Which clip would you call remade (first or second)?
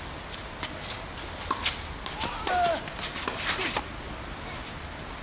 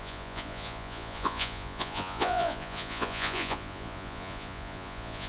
second